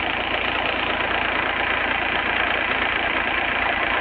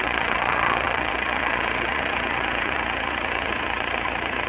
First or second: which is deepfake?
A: second